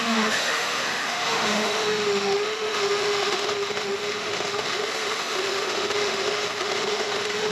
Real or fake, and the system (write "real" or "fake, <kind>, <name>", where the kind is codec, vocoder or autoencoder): fake, autoencoder, DAC-VAE